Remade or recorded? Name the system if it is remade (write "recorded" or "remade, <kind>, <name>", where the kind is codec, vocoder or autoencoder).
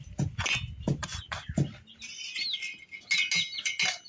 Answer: recorded